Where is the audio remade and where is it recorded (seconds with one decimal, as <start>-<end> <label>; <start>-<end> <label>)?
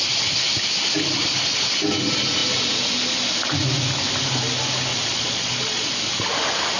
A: 0.0-4.9 recorded; 4.9-5.9 remade; 5.9-6.8 recorded